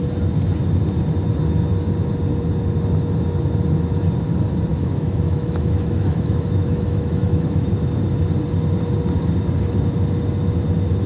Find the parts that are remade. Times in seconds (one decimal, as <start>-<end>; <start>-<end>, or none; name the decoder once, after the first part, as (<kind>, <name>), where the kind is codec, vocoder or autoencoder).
4.7-7.7 (autoencoder, DAC-VAE)